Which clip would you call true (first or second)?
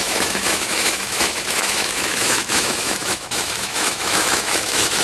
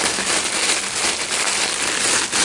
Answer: second